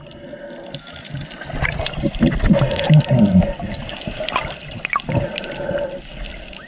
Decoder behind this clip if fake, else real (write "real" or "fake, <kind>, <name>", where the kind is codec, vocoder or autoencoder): real